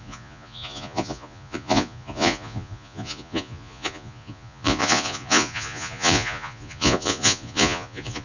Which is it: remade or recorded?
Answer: remade